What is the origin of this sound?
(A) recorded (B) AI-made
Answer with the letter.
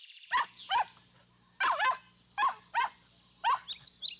A